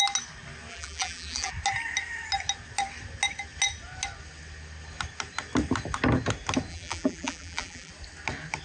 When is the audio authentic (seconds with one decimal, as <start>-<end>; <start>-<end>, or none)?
0.0-0.7; 1.5-6.7; 7.9-8.6